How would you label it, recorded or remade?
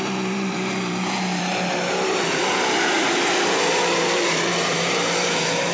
remade